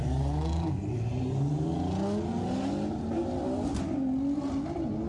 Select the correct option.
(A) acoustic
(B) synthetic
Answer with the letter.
A